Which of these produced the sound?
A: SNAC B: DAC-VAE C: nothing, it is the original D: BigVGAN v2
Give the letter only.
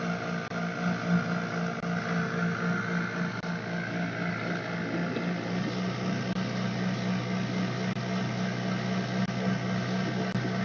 C